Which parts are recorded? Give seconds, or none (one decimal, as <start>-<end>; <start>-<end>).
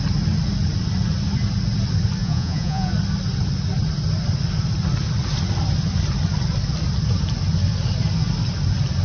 0.0-2.2; 2.9-9.0